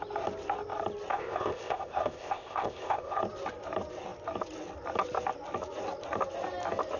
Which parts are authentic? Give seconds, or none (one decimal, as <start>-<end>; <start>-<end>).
0.0-1.1; 3.2-7.0